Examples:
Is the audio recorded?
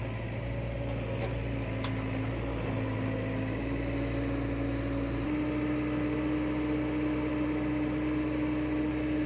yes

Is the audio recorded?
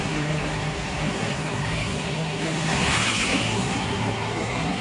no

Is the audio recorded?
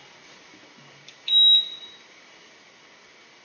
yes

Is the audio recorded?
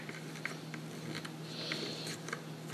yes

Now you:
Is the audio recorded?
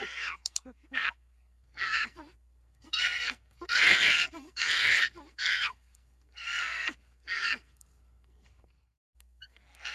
no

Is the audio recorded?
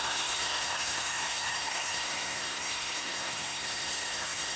no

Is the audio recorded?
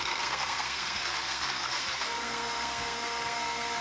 no